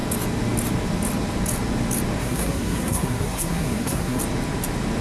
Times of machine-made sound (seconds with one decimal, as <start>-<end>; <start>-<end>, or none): 2.2-4.2